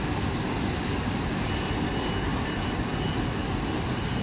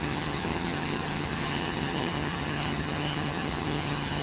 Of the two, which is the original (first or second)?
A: first